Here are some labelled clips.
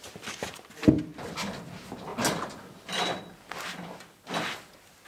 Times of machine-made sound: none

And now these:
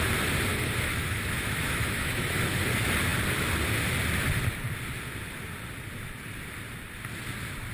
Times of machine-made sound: 0.5-2.4

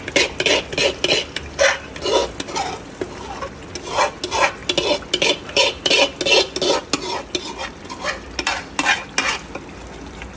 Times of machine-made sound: none